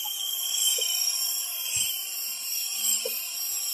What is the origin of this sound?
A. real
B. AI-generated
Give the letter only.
B